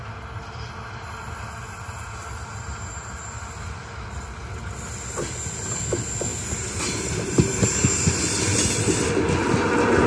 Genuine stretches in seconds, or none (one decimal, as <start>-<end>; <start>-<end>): 0.0-10.1